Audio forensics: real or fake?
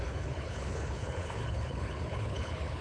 fake